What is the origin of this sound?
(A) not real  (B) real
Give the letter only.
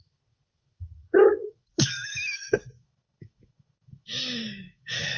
A